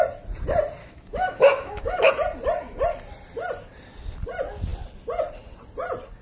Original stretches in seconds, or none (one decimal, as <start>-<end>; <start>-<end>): 0.0-0.8; 2.1-6.2